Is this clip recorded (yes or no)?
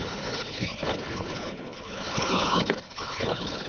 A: no